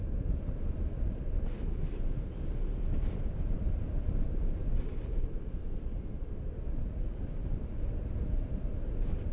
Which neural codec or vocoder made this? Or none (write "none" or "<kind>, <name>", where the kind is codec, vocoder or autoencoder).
none